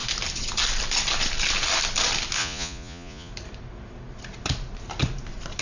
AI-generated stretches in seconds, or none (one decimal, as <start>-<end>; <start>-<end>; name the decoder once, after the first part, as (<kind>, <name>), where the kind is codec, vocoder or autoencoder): 2.4-3.3 (vocoder, Vocos)